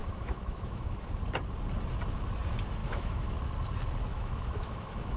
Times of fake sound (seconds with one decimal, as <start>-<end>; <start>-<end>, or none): 0.0-1.1; 2.8-3.4; 4.1-5.2